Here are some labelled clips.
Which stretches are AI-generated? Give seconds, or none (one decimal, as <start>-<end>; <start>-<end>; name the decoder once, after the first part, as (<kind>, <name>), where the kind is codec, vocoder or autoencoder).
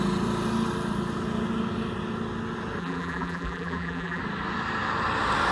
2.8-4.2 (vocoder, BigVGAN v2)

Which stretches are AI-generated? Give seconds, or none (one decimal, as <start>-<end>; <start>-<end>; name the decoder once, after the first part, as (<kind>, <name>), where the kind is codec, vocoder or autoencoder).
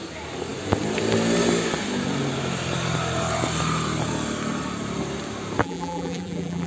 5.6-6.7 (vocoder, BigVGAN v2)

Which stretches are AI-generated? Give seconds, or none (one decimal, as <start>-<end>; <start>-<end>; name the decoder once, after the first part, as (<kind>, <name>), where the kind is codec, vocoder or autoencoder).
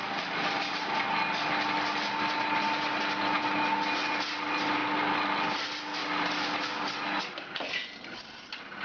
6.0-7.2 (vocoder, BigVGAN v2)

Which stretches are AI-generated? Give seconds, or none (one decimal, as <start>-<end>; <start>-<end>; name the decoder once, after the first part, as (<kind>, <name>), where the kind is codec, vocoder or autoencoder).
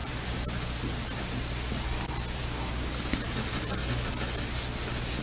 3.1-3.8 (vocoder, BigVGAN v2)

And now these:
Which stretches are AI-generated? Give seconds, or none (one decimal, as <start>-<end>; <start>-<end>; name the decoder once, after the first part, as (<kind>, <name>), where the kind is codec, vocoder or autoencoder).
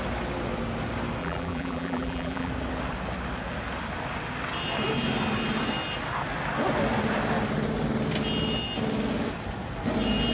1.2-2.5 (vocoder, BigVGAN v2)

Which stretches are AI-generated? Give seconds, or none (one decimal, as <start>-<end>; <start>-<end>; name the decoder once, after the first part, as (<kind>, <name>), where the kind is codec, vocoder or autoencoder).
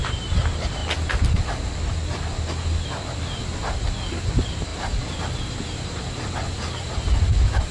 none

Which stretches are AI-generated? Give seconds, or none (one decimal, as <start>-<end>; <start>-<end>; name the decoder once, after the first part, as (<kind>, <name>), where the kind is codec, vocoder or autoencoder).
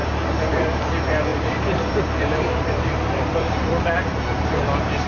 1.3-4.4 (vocoder, BigVGAN v2)